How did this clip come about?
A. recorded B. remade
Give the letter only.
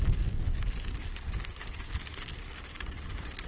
A